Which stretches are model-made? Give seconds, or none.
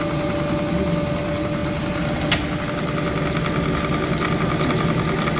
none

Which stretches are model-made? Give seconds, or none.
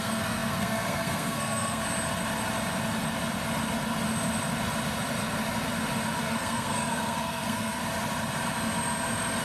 0.0-1.8 (codec, SNAC); 6.2-7.8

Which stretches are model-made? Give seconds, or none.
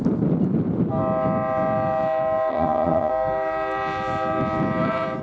2.5-3.1 (vocoder, HiFi-GAN)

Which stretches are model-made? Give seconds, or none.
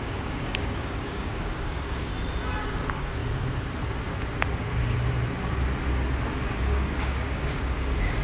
0.0-2.1 (codec, DAC); 2.7-3.2; 6.6-8.2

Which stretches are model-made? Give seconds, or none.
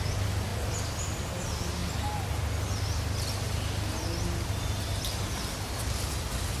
none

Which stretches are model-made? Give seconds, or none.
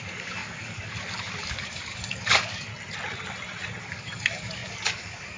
0.0-2.7 (codec, DAC); 3.8-5.4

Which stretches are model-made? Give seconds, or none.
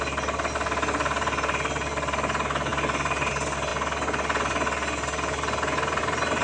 none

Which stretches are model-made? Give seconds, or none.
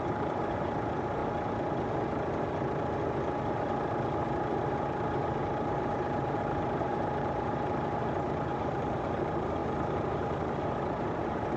0.0-1.2 (vocoder, BigVGAN v2); 4.7-11.6